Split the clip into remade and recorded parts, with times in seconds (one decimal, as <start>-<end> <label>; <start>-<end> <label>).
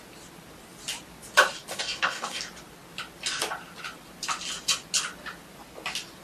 0.0-1.7 recorded; 1.7-2.4 remade; 2.4-6.2 recorded